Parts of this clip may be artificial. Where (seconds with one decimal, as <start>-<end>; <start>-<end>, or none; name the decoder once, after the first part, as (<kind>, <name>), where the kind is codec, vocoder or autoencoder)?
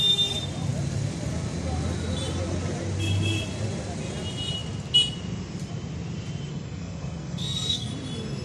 6.5-7.9 (codec, SNAC)